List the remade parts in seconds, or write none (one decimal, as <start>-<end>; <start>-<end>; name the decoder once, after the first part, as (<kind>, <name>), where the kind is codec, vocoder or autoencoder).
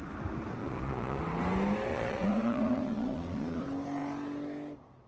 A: 0.6-1.2 (vocoder, Vocos); 1.9-3.6